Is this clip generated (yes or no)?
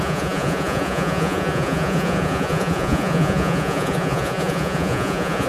yes